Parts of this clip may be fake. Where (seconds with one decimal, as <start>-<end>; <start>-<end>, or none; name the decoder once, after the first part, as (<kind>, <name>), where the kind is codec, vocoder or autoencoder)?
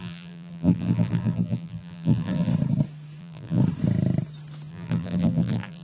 0.0-2.5 (vocoder, BigVGAN v2); 3.2-3.6; 4.7-5.8